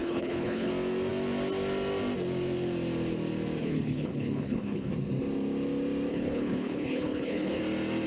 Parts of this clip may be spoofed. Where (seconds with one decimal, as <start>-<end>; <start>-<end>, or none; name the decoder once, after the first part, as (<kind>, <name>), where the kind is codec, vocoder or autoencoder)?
0.0-0.7 (codec, HILCodec); 3.6-4.9; 6.1-7.6